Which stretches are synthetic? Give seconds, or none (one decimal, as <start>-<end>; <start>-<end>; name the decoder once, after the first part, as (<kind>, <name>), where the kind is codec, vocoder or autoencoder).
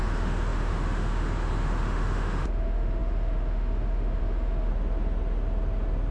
0.0-4.7 (autoencoder, DAC-VAE)